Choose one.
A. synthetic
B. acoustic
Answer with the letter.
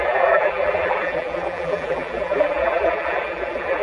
A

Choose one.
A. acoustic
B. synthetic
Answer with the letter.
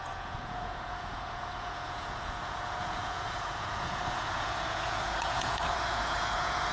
B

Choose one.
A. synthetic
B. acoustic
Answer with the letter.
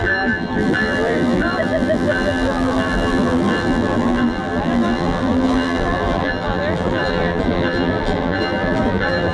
A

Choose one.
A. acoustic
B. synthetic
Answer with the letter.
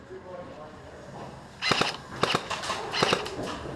A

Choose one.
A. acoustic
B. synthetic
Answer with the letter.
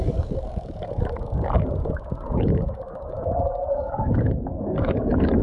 B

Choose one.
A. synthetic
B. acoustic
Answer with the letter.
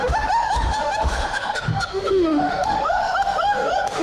A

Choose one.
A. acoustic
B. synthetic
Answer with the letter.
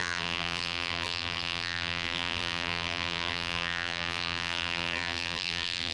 B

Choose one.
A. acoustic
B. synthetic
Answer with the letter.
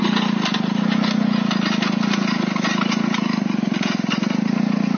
A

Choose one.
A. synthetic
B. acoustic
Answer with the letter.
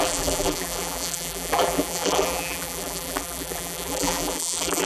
A